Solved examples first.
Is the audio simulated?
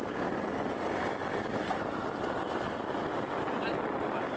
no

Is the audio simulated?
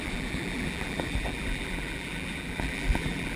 yes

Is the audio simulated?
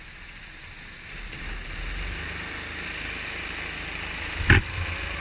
no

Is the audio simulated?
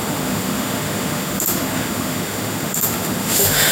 yes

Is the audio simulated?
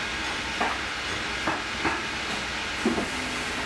no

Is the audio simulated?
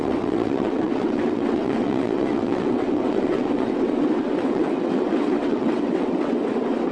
yes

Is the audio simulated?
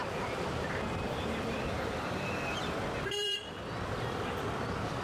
yes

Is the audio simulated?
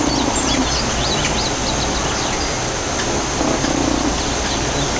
no